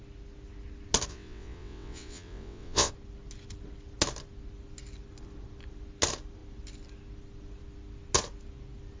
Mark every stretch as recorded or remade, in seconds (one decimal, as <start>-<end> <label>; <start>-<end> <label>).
0.0-1.1 recorded; 1.1-2.9 remade; 2.9-9.0 recorded